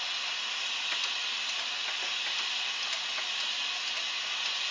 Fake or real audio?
real